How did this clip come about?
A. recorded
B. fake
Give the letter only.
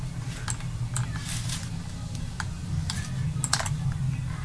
A